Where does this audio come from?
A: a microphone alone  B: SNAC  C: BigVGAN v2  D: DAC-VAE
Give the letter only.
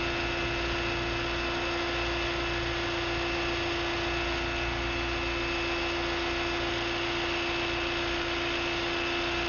A